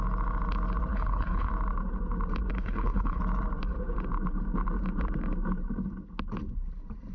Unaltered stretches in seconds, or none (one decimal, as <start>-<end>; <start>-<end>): 0.0-0.9; 1.5-2.5; 3.2-7.1